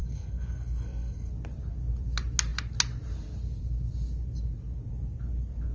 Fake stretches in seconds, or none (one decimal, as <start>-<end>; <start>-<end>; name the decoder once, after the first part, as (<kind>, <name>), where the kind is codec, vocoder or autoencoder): 0.0-1.3 (codec, SNAC)